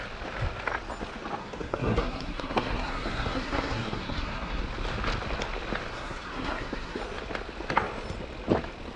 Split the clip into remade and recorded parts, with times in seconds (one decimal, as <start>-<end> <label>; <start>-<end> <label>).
0.0-1.4 recorded; 1.4-4.6 remade; 4.6-5.9 recorded; 5.9-7.0 remade; 7.0-9.0 recorded

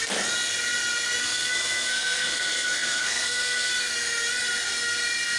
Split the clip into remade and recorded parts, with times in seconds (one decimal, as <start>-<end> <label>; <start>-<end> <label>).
0.0-1.2 recorded; 1.2-3.7 remade; 3.7-5.4 recorded

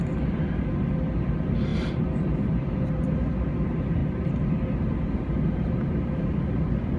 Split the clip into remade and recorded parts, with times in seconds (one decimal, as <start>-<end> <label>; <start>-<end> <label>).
0.0-7.0 recorded

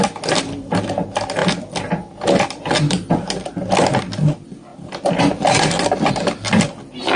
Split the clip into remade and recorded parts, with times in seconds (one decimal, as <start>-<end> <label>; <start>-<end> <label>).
0.0-7.2 recorded

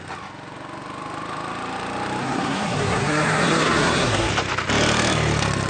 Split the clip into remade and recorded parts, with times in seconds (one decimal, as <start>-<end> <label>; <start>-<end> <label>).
0.0-2.2 recorded; 2.2-4.3 remade; 4.3-5.7 recorded